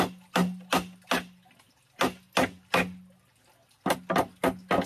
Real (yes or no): yes